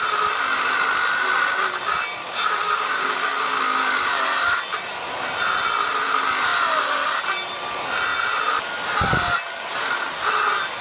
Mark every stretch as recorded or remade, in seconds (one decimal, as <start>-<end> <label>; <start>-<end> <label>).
0.0-2.2 recorded; 2.2-3.6 remade; 3.6-10.8 recorded